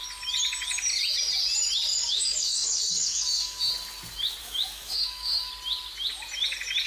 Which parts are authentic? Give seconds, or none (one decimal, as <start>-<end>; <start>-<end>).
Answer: 0.0-1.9; 3.7-4.4; 5.5-6.9